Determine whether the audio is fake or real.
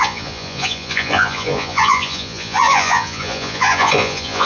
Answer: fake